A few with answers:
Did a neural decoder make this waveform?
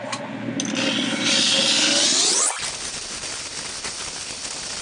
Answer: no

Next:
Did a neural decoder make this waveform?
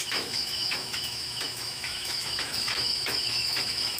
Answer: yes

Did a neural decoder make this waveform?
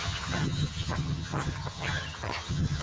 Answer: yes